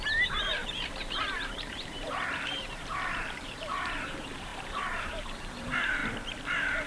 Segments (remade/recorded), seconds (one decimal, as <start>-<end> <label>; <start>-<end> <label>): 0.0-6.0 remade; 6.0-6.9 recorded